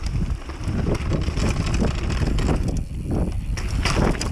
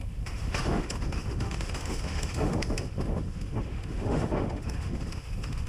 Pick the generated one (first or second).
second